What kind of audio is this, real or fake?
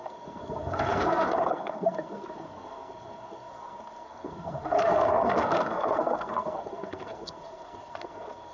fake